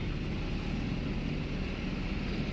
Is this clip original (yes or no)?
yes